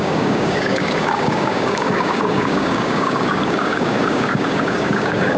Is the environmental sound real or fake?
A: fake